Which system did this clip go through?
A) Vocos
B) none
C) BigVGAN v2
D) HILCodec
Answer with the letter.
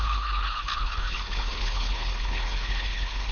D